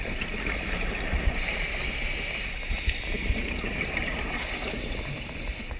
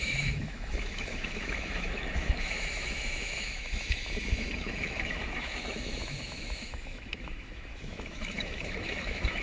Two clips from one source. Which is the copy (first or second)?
second